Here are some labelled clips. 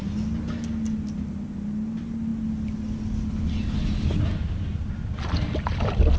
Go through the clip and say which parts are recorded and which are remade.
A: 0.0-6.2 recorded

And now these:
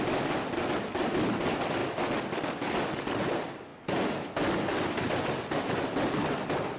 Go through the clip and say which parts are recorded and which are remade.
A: 0.0-6.8 recorded

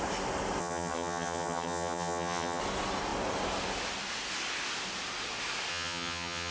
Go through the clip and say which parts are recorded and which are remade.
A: 0.0-0.6 recorded; 0.6-2.6 remade; 2.6-5.7 recorded; 5.7-6.5 remade